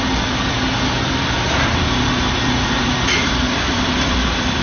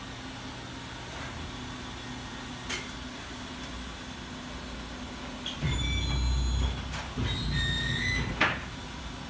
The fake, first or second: first